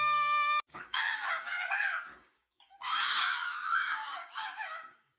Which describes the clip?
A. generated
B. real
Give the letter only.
A